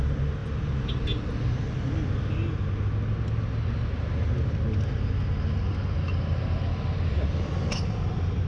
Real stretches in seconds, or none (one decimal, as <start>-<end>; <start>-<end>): 0.0-0.4; 1.6-8.5